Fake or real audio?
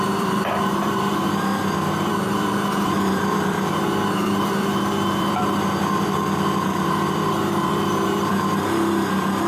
fake